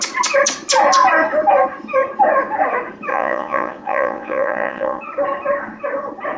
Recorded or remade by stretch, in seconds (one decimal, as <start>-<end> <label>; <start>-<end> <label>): 0.0-3.1 recorded; 3.1-5.0 remade; 5.0-6.4 recorded